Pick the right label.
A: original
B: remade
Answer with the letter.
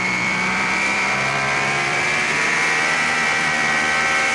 B